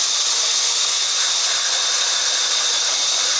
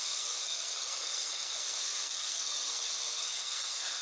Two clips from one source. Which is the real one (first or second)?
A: first